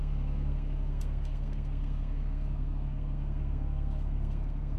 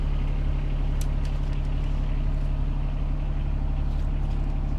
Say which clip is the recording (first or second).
second